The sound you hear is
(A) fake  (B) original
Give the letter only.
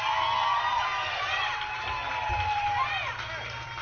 B